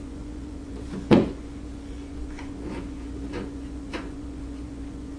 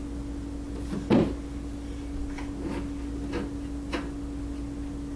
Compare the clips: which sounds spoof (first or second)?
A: first